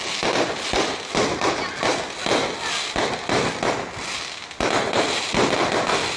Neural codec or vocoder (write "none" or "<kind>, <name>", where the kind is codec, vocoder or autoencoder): none